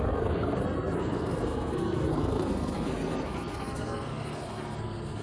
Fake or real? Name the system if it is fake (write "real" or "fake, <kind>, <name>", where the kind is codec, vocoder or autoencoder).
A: fake, codec, SNAC